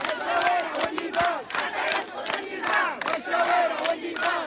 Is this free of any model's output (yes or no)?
yes